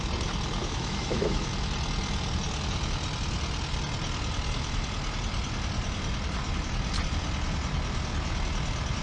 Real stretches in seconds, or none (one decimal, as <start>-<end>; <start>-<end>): 0.0-0.6; 1.5-9.0